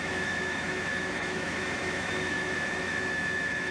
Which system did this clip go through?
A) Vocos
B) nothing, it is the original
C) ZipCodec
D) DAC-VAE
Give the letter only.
D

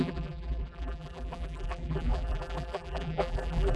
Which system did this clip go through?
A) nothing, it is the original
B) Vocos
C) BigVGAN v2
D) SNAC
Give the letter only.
C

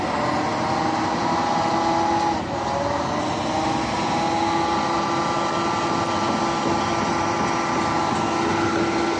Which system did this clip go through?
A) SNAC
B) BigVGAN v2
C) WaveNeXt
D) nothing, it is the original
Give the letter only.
D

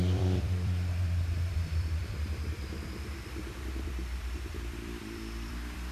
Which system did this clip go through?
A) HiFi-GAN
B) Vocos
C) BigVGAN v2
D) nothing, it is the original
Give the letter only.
C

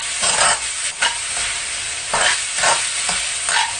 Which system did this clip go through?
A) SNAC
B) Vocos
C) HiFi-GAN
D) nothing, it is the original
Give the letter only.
D